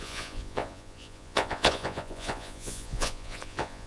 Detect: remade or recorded remade